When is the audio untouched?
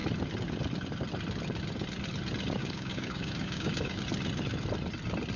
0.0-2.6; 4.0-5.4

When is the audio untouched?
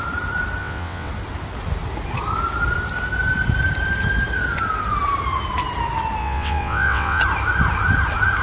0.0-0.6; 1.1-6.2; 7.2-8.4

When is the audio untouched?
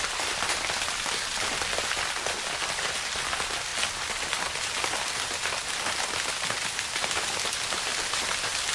0.0-3.7; 8.0-8.7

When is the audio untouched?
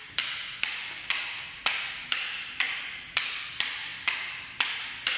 0.0-5.2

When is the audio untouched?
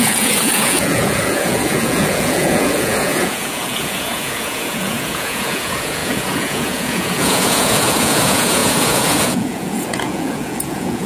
none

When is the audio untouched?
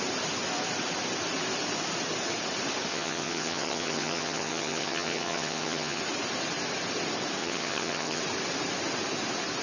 0.0-2.9; 6.0-7.4; 8.2-9.6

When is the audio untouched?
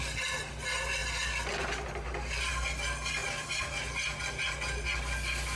0.0-5.6